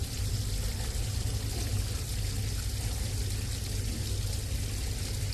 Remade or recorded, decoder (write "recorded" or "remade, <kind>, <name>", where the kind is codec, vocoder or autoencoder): recorded